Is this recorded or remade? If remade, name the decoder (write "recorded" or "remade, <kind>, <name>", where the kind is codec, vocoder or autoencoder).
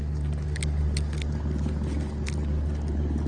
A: recorded